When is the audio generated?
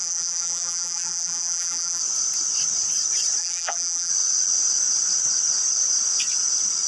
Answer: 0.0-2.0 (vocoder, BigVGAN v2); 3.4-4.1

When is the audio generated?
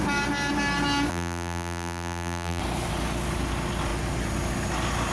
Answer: 1.1-2.6 (vocoder, BigVGAN v2)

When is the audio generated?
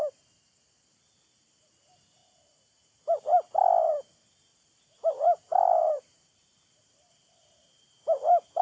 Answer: 2.2-3.5 (vocoder, BigVGAN v2); 4.5-8.6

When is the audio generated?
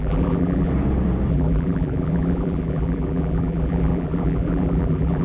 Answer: 0.0-0.7 (vocoder, BigVGAN v2); 1.3-5.2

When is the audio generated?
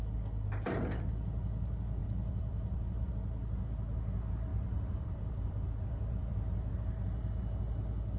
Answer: 2.0-3.1 (vocoder, BigVGAN v2); 4.5-6.7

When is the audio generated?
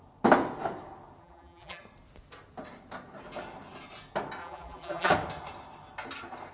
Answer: 1.2-1.8 (vocoder, BigVGAN v2); 4.4-5.1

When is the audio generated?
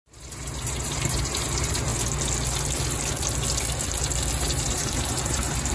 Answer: 0.0-1.9 (vocoder, BigVGAN v2); 4.4-5.7